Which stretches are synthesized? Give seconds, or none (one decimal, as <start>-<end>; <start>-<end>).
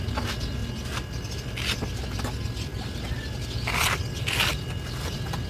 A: none